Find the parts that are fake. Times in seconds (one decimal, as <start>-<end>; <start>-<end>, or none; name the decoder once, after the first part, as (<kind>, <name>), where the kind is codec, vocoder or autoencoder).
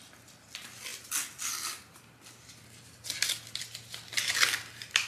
none